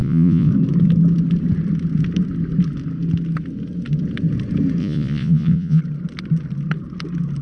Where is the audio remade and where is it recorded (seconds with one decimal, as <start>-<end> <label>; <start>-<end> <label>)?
0.0-0.5 remade; 0.5-4.8 recorded; 4.8-5.8 remade; 5.8-7.4 recorded